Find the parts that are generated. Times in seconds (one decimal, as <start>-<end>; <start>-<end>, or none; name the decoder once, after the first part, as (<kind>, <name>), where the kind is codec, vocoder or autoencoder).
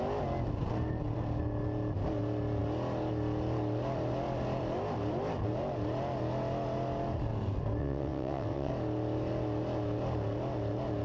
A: 7.8-8.7 (vocoder, WaveNeXt)